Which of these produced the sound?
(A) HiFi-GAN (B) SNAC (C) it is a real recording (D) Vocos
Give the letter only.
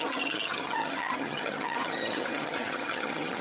A